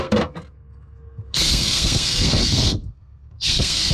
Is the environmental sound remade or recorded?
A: remade